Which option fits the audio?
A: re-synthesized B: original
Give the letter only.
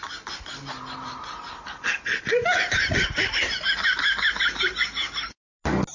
B